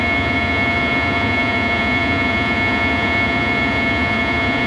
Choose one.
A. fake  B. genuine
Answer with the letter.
A